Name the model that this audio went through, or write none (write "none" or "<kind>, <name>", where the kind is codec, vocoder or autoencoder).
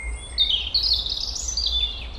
none